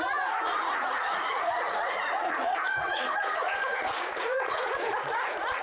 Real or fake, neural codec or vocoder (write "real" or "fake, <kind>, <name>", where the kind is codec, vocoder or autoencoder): fake, vocoder, Vocos